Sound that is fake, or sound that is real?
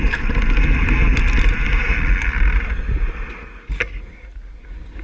real